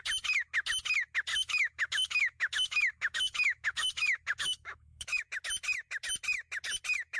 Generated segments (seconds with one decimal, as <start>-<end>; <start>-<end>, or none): 1.3-5.2